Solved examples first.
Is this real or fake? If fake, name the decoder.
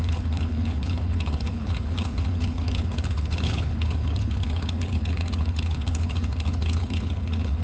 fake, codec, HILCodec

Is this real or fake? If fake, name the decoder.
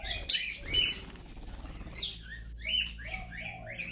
real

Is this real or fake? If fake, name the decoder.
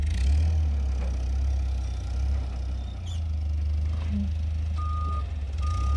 real